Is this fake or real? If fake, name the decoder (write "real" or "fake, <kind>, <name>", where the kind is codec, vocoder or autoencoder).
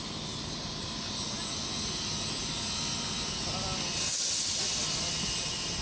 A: real